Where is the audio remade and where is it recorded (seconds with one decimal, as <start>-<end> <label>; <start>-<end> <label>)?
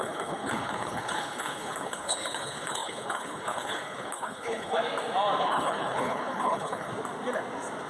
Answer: 0.0-4.8 remade; 4.8-5.4 recorded; 5.4-6.9 remade; 6.9-7.9 recorded